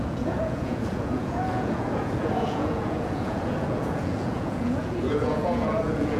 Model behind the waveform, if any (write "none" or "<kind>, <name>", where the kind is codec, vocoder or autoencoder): vocoder, Vocos